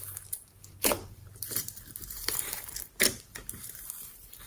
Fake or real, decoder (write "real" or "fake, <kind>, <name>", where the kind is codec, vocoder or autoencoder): fake, vocoder, BigVGAN v2